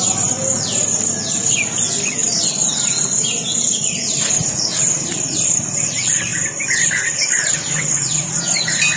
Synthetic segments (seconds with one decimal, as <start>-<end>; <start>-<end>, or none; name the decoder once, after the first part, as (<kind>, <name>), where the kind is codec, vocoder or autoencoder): none